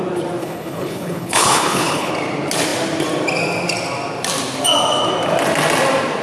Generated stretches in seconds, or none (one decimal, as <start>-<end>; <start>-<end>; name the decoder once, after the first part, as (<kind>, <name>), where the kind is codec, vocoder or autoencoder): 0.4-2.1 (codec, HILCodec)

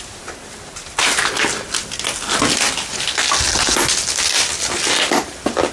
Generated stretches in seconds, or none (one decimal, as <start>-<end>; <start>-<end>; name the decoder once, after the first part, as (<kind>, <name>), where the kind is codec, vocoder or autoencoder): none

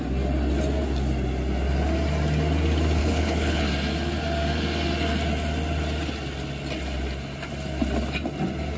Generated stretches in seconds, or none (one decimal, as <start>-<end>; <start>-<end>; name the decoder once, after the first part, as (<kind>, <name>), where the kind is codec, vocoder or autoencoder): 3.0-3.6 (codec, HILCodec)

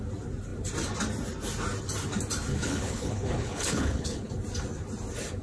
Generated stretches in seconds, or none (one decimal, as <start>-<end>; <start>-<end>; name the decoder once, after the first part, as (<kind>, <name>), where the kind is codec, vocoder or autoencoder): 2.5-4.3 (codec, HILCodec)

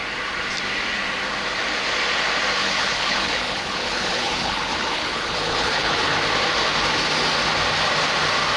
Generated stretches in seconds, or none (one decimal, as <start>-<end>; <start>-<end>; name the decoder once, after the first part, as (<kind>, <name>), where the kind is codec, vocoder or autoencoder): 2.6-6.2 (codec, HILCodec)

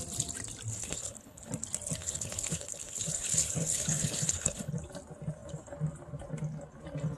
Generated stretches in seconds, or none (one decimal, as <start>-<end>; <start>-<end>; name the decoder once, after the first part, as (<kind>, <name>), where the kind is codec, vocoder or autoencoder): 0.7-1.5 (codec, HILCodec); 2.0-4.7